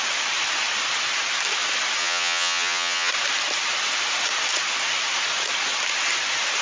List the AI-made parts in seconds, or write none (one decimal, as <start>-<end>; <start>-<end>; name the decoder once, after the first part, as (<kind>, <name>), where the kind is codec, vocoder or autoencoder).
2.0-3.1 (vocoder, HiFi-GAN)